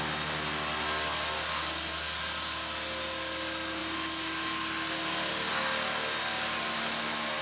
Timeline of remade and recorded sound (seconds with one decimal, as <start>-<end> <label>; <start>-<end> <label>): 0.0-7.4 recorded